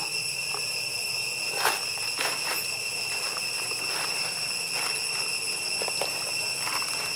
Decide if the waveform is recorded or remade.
recorded